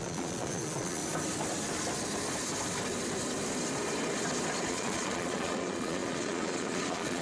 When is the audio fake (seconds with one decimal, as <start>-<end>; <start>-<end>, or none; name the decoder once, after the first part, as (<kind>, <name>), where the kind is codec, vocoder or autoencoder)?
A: 0.0-1.0 (vocoder, Vocos); 4.7-7.2